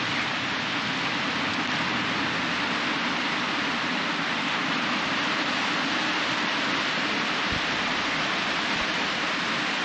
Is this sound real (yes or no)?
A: yes